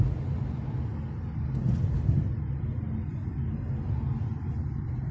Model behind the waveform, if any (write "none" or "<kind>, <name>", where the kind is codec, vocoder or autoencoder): none